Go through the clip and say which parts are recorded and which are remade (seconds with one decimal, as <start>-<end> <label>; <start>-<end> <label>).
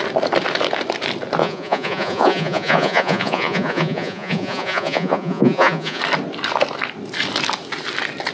0.0-1.4 recorded; 1.4-6.0 remade; 6.0-8.3 recorded